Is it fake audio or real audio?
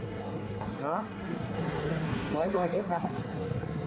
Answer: fake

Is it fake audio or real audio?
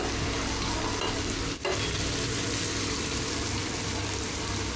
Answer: real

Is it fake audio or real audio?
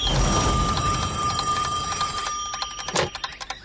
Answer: real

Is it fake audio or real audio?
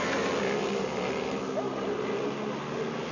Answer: real